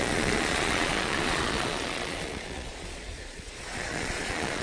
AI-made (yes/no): yes